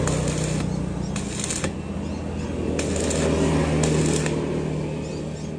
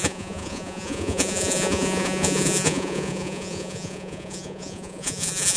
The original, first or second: first